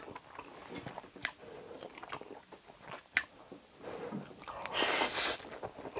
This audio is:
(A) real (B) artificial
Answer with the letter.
A